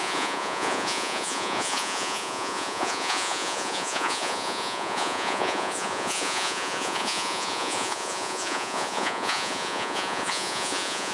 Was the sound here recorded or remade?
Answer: remade